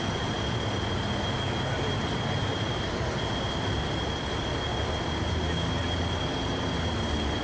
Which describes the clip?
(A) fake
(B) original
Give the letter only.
B